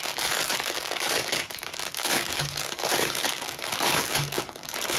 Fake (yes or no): yes